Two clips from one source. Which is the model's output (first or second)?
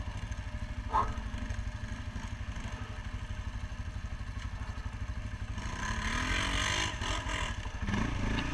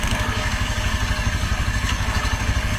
second